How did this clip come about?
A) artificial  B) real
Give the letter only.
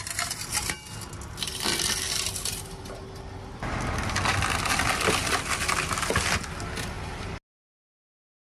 B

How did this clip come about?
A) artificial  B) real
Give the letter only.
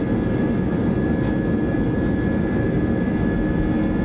B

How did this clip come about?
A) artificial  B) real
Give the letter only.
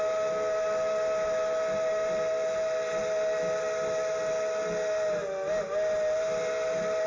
B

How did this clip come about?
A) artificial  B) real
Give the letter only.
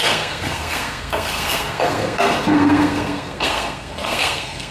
A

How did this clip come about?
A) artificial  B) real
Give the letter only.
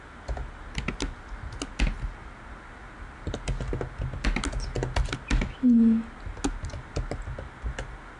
B